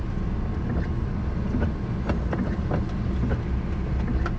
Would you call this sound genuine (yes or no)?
yes